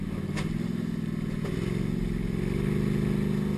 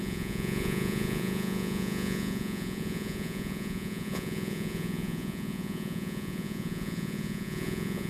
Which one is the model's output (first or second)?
second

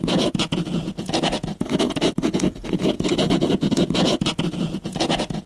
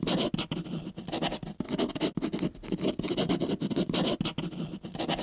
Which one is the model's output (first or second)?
first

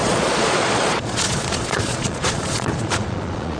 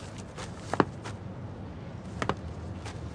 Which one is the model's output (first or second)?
first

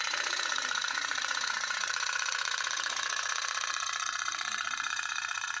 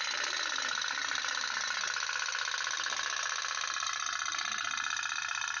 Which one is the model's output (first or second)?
first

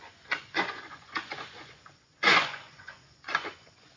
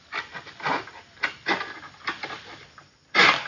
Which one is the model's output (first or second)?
first